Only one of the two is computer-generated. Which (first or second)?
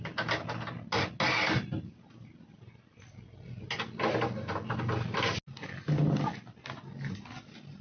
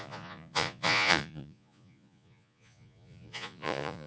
second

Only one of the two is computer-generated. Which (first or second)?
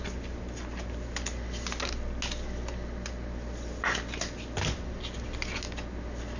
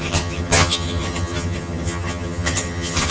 second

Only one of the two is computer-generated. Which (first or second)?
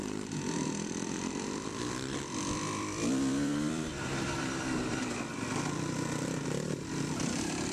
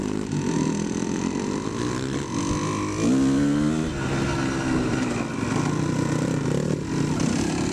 first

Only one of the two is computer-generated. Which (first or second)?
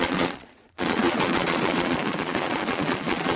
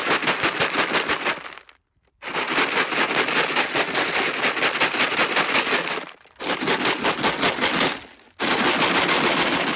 first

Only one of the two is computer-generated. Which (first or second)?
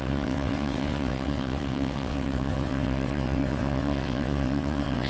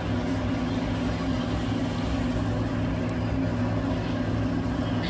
first